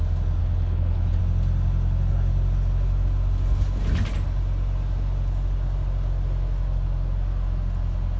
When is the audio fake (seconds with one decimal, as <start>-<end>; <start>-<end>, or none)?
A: 0.4-1.2

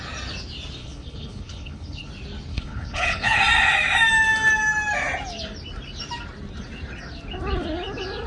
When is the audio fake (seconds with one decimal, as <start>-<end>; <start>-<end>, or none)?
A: 0.8-2.1; 2.5-3.4

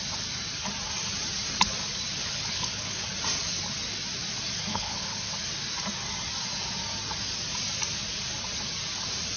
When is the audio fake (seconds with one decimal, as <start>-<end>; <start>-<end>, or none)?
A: 2.2-3.0; 4.7-5.3

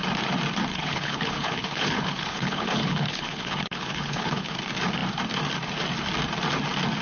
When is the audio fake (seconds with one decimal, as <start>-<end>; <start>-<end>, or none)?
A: 0.7-4.5

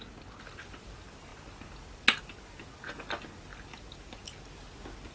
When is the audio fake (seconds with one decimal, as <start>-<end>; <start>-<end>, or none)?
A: none